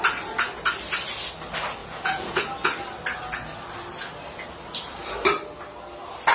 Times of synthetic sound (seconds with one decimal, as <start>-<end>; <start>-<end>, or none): 1.8-2.4